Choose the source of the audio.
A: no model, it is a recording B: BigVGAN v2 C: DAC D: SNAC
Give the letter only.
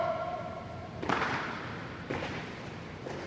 B